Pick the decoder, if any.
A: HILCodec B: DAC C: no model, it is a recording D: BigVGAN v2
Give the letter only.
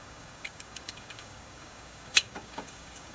B